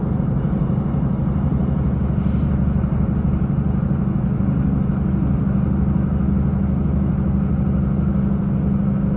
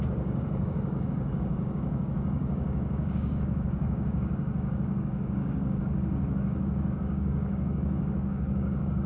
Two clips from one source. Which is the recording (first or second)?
first